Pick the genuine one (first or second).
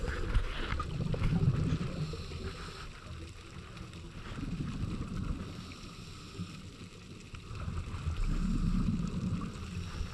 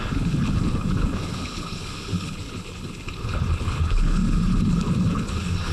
first